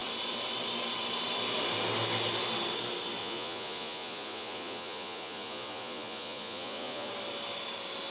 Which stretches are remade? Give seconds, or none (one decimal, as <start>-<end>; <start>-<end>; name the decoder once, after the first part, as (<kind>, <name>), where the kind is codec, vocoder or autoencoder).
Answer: 3.2-7.1 (vocoder, Vocos)